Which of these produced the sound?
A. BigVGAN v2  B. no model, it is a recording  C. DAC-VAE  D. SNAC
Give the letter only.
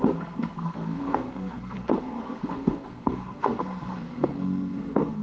D